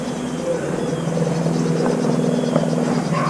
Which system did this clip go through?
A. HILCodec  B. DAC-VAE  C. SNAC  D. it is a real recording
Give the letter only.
D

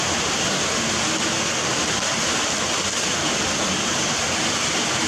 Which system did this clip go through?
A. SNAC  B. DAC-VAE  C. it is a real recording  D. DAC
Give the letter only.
C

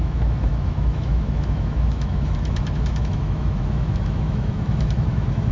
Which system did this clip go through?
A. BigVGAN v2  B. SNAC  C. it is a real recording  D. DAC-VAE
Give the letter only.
D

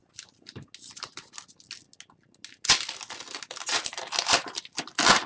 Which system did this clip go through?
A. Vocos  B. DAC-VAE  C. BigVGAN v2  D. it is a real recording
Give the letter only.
D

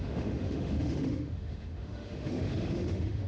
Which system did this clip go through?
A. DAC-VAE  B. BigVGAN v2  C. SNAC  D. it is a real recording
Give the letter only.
A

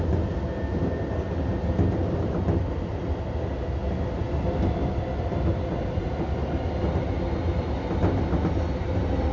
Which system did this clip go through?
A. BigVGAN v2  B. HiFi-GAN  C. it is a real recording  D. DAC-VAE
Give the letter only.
C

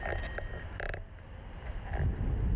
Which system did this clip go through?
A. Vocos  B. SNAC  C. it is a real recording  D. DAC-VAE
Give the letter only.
C